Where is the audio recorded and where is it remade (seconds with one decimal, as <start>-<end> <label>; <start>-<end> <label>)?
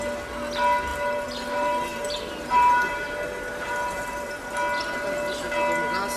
0.0-0.9 recorded; 0.9-4.3 remade; 4.3-6.2 recorded